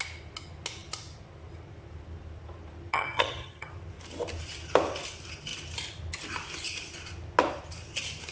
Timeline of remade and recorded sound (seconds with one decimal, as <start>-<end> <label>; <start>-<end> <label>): 0.0-2.9 recorded; 2.9-3.7 remade; 3.7-8.3 recorded